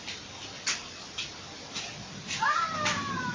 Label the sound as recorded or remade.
recorded